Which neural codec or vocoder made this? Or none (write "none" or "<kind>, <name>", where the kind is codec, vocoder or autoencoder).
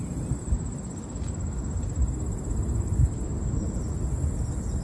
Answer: none